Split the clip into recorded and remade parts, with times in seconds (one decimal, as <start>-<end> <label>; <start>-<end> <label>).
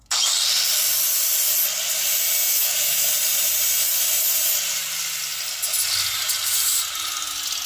0.0-2.5 recorded; 2.5-3.1 remade; 3.1-7.7 recorded